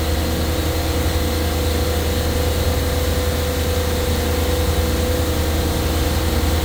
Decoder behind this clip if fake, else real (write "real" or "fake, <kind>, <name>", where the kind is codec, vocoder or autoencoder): real